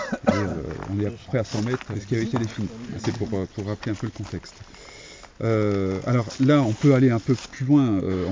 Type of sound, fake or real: real